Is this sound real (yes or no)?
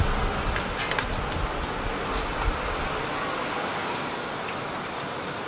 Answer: yes